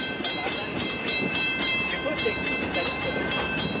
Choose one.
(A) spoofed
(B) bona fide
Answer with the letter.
A